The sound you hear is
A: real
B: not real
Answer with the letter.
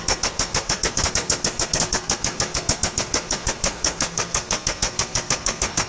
B